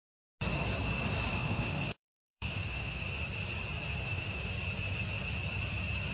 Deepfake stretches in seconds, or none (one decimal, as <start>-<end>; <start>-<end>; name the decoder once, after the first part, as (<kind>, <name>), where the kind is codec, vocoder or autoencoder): 1.3-3.0 (autoencoder, DAC-VAE); 4.0-4.5